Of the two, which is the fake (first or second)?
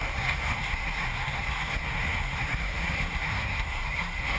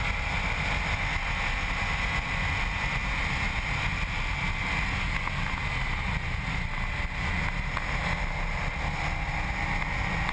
first